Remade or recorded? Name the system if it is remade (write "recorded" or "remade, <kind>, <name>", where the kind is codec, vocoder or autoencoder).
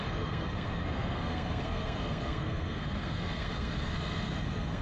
remade, codec, SNAC